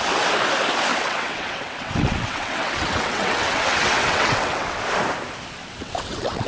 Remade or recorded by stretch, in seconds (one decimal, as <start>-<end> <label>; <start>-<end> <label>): 0.0-0.9 recorded; 0.9-4.8 remade; 4.8-5.6 recorded; 5.6-6.5 remade